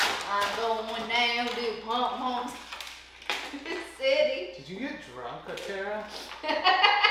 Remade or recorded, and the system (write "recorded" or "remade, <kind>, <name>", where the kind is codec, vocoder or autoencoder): recorded